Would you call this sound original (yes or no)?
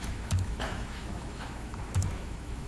no